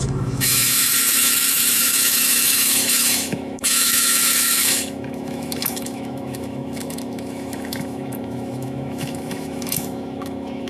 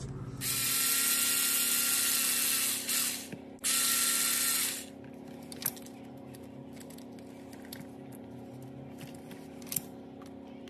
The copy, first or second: first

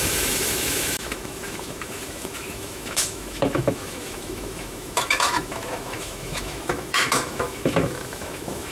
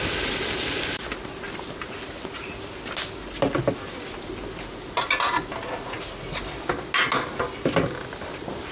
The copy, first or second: first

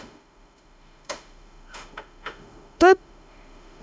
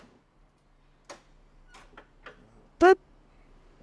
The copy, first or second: first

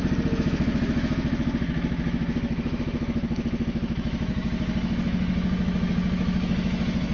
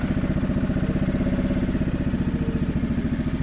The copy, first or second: first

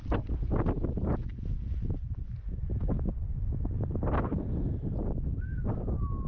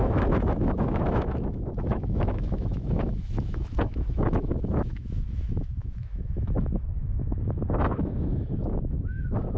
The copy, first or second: second